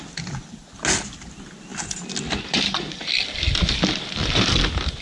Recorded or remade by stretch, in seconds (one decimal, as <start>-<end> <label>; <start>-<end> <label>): 0.0-5.0 recorded